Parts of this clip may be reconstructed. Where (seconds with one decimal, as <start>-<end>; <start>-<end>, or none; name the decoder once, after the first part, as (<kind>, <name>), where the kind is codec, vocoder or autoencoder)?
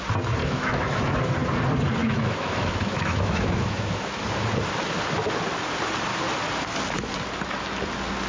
0.4-1.2 (autoencoder, DAC-VAE); 2.0-4.2